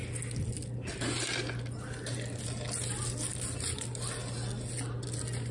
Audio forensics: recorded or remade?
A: recorded